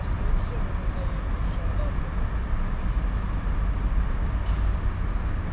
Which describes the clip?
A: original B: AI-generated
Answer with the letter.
A